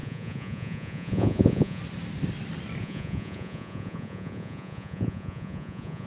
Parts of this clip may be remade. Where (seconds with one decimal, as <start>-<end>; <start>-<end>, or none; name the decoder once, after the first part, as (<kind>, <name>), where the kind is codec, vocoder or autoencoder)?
0.0-1.8 (vocoder, Vocos); 2.8-6.1